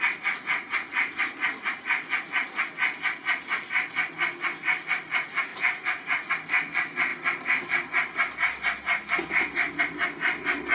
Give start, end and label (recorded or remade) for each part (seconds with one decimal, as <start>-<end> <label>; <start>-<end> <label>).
0.0-5.5 recorded; 5.5-6.3 remade; 6.3-10.7 recorded